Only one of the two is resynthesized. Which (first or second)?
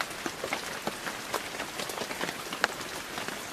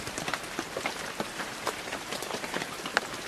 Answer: second